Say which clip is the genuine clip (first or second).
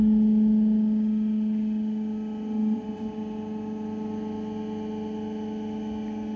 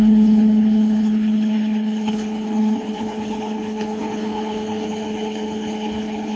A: first